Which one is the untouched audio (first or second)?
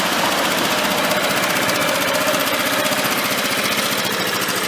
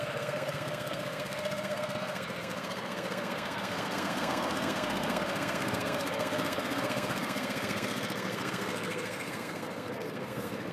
first